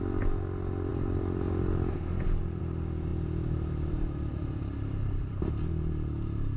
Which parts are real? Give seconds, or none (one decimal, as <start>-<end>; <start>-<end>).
0.0-0.9; 2.6-3.1; 5.5-6.6